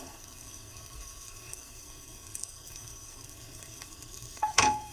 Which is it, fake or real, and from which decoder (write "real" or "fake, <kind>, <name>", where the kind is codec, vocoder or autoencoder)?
fake, codec, SNAC